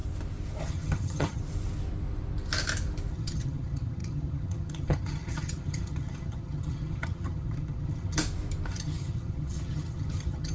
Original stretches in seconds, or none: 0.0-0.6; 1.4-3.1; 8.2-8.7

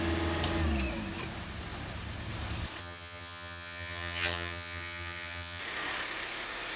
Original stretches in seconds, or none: 0.0-2.8; 5.6-6.8